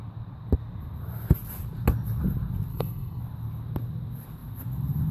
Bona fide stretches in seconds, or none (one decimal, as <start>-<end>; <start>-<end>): 0.0-2.7; 3.2-5.1